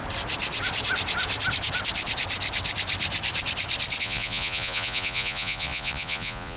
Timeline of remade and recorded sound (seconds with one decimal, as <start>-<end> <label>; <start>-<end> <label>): 0.0-4.0 recorded; 4.0-6.6 remade